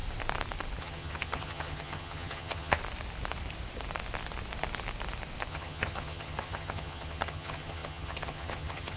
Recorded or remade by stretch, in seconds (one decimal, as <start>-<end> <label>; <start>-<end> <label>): 0.0-0.8 recorded; 0.8-2.8 remade; 2.8-5.5 recorded; 5.5-9.0 remade